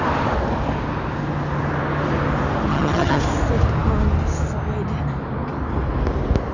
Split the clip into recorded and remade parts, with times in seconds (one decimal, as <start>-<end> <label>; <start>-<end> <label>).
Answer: 0.0-2.7 recorded; 2.7-3.2 remade; 3.2-6.5 recorded

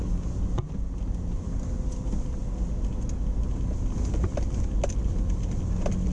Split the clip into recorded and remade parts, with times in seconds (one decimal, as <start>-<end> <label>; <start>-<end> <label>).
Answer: 0.0-6.1 recorded

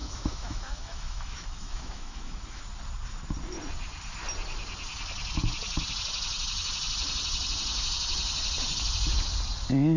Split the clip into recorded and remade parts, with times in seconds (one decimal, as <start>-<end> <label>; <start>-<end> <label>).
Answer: 0.0-2.6 remade; 2.6-10.0 recorded